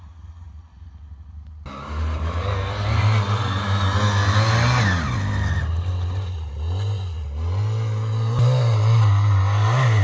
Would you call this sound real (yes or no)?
yes